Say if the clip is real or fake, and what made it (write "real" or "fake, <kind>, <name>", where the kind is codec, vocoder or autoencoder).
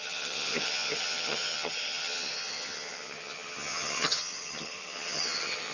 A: fake, vocoder, HiFi-GAN